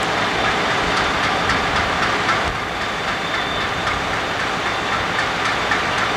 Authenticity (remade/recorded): recorded